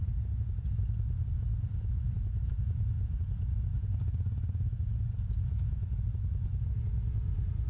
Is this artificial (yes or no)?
yes